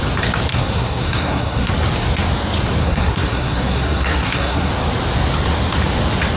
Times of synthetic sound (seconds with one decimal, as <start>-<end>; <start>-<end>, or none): 0.5-1.7; 2.8-4.7